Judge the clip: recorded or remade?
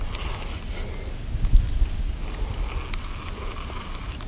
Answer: recorded